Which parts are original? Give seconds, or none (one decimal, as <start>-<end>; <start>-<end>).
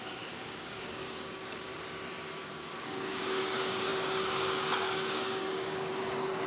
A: 1.7-2.4